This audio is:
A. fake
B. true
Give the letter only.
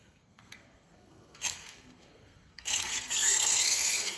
A